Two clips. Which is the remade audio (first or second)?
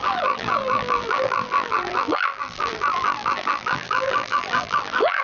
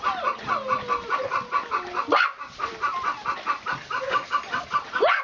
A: first